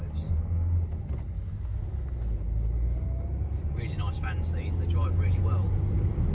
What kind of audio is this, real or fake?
real